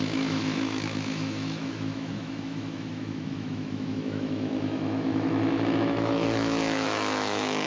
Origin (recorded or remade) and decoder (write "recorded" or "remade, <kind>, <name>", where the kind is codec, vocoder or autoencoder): remade, autoencoder, DAC-VAE